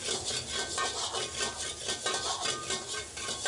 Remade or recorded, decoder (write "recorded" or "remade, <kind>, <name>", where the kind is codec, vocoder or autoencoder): recorded